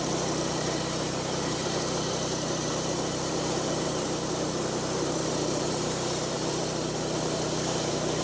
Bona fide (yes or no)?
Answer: no